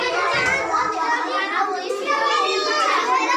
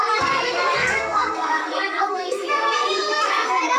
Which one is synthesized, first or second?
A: second